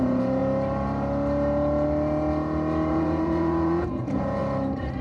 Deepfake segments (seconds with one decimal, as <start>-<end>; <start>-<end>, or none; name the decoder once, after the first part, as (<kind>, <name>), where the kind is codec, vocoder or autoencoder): 0.0-0.4 (vocoder, Vocos); 2.9-4.4